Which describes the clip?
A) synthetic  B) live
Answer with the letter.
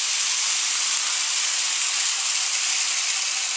B